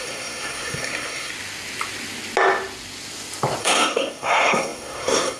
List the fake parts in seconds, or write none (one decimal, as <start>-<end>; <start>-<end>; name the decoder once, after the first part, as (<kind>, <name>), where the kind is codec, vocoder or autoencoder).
0.0-1.3 (codec, SNAC); 3.6-5.4